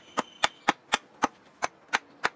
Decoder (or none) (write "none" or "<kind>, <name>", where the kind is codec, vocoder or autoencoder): none